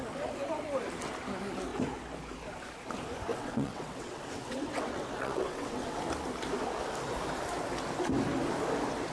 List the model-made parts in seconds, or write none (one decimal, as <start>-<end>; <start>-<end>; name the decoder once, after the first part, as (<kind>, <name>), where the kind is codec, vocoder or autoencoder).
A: 3.3-6.0 (vocoder, WaveNeXt)